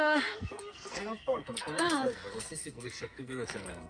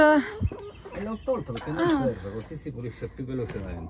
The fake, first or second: first